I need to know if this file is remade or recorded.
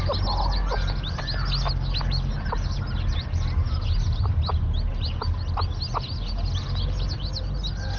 recorded